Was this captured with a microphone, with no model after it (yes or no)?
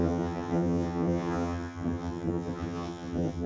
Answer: no